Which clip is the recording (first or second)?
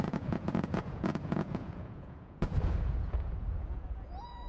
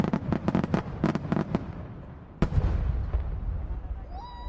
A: second